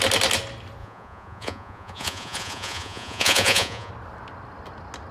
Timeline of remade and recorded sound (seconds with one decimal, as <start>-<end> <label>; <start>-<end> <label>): 0.0-0.8 recorded; 0.8-3.9 remade; 3.9-5.1 recorded